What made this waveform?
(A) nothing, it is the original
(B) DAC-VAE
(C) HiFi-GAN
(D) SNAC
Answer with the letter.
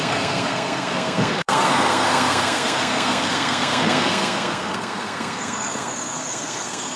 D